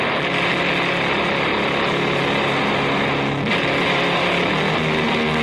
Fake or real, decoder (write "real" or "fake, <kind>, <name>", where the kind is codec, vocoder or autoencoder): fake, vocoder, BigVGAN v2